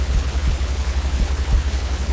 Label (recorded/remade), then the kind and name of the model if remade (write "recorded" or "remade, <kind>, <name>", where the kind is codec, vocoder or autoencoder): remade, codec, HILCodec